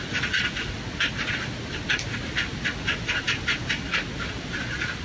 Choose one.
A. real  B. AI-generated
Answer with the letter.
A